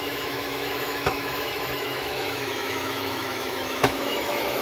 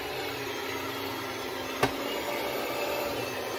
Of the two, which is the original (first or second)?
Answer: second